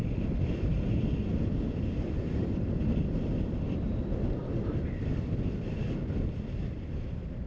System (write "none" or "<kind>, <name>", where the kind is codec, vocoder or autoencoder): none